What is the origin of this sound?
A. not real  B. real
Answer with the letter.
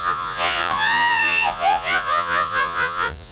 A